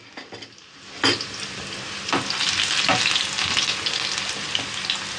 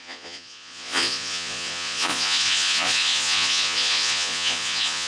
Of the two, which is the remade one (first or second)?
second